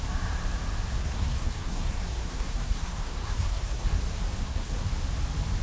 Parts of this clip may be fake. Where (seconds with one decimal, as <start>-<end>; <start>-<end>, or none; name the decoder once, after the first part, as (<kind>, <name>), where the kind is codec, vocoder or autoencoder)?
1.0-4.0 (codec, SNAC); 4.4-4.9